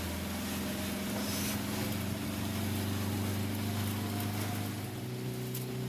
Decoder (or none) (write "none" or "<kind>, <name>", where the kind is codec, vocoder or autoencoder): none